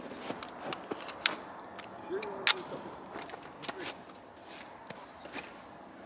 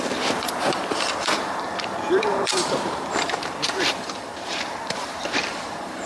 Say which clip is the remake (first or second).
second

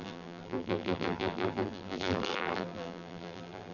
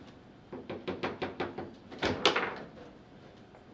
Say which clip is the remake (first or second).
first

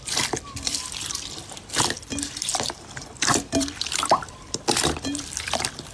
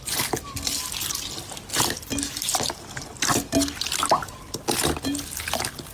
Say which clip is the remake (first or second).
first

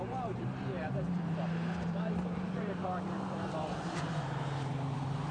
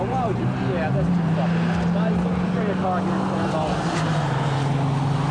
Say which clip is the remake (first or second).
first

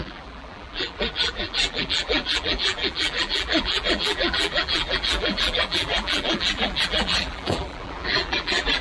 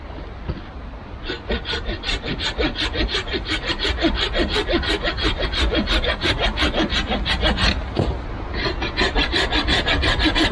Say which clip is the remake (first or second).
first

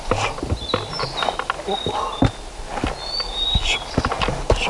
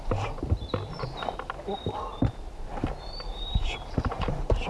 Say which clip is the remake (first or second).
second